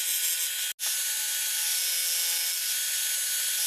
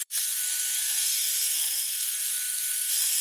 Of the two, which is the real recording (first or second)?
first